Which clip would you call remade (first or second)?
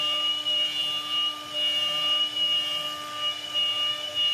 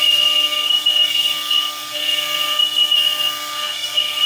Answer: second